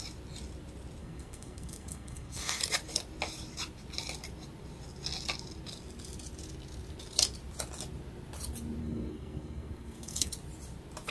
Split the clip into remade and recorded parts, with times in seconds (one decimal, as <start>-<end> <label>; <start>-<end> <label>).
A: 0.0-1.0 recorded; 1.0-2.6 remade; 2.6-8.8 recorded; 8.8-10.3 remade; 10.3-11.1 recorded